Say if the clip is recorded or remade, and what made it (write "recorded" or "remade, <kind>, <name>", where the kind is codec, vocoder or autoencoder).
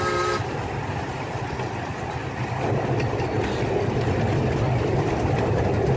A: recorded